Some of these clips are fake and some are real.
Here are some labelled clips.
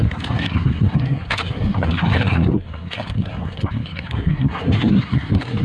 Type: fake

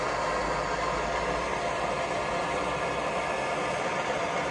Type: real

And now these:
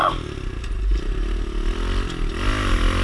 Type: real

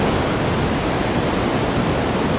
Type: real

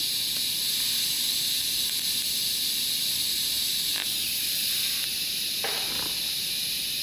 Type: real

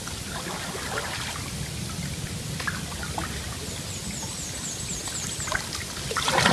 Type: real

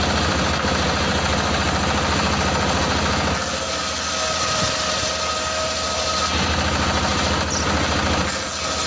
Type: real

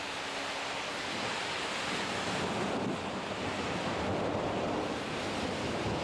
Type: real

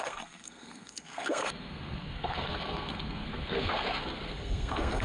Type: fake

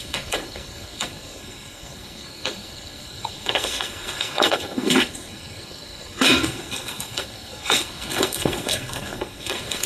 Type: fake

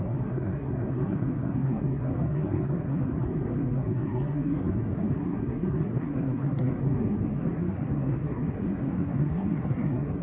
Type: fake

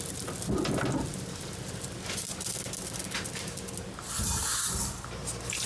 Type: real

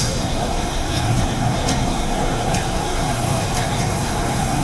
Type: fake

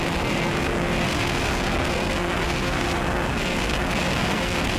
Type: fake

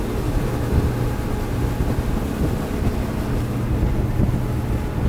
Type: real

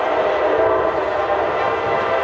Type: real